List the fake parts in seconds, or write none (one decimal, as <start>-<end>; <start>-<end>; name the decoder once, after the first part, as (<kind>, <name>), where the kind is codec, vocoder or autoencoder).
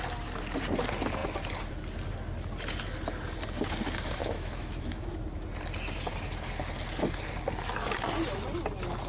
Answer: 4.2-5.1 (autoencoder, DAC-VAE)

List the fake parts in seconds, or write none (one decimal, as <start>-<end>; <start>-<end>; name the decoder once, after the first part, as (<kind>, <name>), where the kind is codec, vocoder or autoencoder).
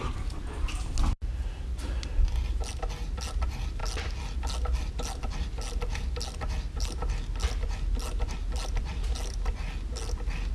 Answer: none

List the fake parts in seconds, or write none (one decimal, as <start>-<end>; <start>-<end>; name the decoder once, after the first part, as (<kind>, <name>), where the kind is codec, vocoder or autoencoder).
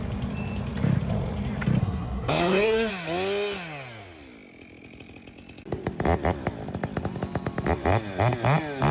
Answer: 1.8-2.9 (codec, SNAC)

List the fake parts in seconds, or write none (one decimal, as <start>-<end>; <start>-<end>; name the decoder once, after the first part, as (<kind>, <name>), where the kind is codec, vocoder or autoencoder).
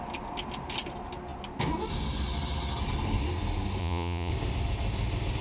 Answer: 3.8-4.3 (vocoder, Vocos)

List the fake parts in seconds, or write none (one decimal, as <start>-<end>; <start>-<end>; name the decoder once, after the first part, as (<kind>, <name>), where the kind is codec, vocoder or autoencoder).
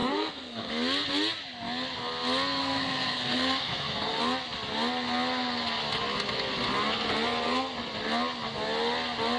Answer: 0.0-0.7 (codec, SNAC); 2.6-4.2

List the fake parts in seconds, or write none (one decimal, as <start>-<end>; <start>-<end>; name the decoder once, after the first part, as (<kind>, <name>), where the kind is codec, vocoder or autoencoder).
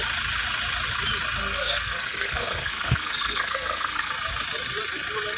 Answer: 1.4-4.1 (codec, SNAC)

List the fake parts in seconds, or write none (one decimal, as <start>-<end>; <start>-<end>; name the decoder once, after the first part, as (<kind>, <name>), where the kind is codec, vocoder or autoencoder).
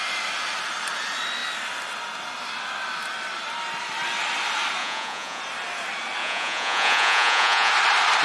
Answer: 4.8-5.4 (vocoder, Vocos); 6.2-7.7